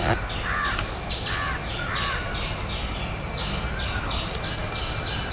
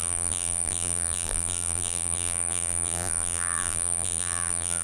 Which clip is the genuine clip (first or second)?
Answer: first